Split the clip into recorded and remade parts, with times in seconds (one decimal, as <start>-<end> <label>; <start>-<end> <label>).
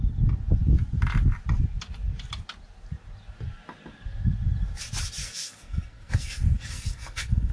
0.0-5.2 recorded; 5.2-7.5 remade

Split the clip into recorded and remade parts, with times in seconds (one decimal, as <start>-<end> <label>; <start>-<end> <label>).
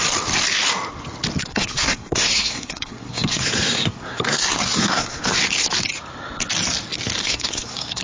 0.0-1.4 recorded; 1.4-5.2 remade; 5.2-7.2 recorded; 7.2-8.0 remade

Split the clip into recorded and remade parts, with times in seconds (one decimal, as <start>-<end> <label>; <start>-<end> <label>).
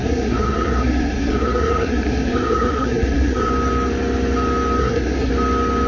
0.0-3.5 remade; 3.5-4.8 recorded; 4.8-5.3 remade; 5.3-5.9 recorded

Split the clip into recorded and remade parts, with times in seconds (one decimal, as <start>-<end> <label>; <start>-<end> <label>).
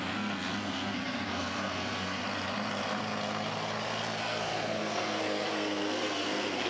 0.0-2.2 remade; 2.2-4.2 recorded; 4.2-6.7 remade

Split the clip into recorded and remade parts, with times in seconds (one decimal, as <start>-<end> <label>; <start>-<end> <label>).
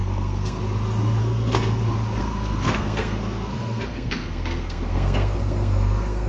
0.0-0.6 remade; 0.6-1.2 recorded; 1.2-1.8 remade; 1.8-2.2 recorded; 2.2-6.3 remade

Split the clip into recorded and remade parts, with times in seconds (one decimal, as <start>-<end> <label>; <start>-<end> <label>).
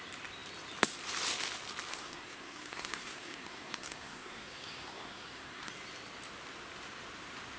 0.0-1.9 recorded; 1.9-5.7 remade; 5.7-7.6 recorded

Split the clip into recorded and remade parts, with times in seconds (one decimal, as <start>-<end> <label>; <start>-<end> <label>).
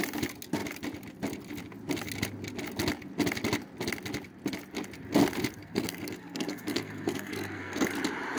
0.0-5.6 recorded; 5.6-7.9 remade; 7.9-8.4 recorded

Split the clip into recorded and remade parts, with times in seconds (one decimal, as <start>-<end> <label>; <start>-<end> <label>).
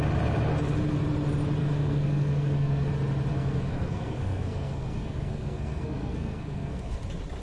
0.0-1.6 recorded; 1.6-2.9 remade; 2.9-3.3 recorded; 3.3-7.0 remade; 7.0-7.4 recorded